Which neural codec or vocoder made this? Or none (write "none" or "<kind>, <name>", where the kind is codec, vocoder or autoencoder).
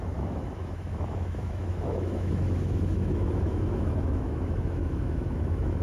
autoencoder, DAC-VAE